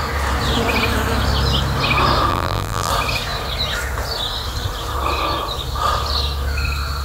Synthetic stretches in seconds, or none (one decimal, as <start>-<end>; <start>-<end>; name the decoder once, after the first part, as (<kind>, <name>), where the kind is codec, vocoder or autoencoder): 2.3-2.9 (vocoder, BigVGAN v2)